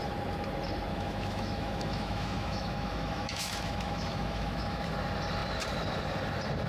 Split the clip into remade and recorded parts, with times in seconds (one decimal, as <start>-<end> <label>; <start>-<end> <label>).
0.0-0.9 recorded; 0.9-4.9 remade; 4.9-6.7 recorded